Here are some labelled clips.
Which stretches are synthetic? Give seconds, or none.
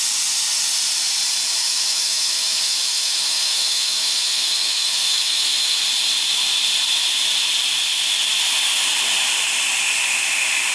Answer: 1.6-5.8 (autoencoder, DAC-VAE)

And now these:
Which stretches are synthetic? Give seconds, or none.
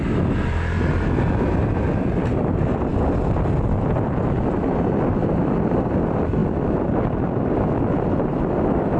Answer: none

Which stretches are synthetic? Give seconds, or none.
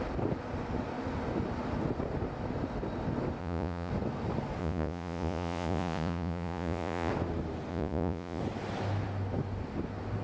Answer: 3.4-3.9 (vocoder, Vocos); 4.6-7.1; 7.7-8.4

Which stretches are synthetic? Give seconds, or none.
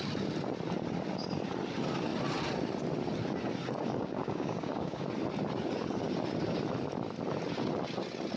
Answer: 3.9-5.1 (codec, DAC)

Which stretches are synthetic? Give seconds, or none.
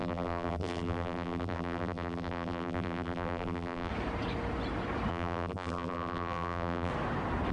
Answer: 0.0-3.9 (vocoder, BigVGAN v2); 5.1-6.9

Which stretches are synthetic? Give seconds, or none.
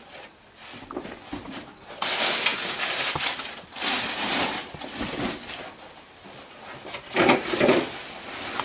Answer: none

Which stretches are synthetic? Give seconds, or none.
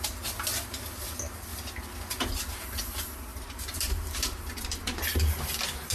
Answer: 3.3-4.6 (vocoder, BigVGAN v2)